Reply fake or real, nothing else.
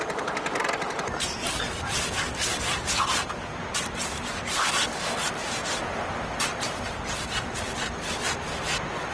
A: real